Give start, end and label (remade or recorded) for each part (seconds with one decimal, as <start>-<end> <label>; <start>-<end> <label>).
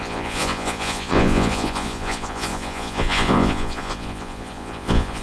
0.0-5.2 remade